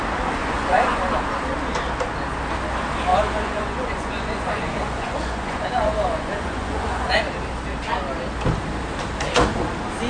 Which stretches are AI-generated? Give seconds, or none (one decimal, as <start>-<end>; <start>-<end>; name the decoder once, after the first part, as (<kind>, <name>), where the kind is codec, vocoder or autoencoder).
0.4-1.0 (vocoder, Vocos); 3.1-7.2